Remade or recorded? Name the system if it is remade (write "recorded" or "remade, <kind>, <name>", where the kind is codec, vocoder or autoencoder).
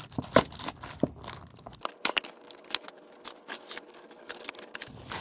recorded